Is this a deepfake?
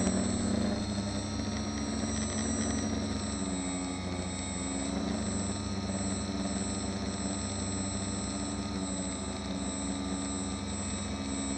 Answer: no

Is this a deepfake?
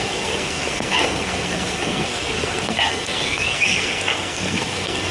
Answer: yes